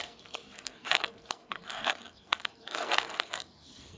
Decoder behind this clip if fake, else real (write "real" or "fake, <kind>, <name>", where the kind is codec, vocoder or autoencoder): fake, codec, SNAC